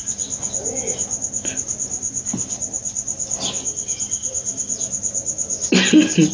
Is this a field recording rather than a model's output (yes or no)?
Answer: yes